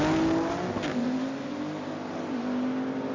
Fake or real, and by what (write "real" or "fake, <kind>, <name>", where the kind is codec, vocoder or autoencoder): real